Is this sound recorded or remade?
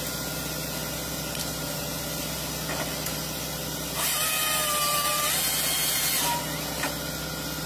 recorded